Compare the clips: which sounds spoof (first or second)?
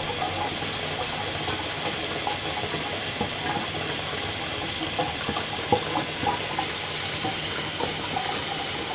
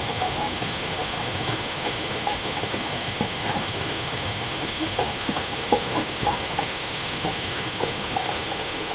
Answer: second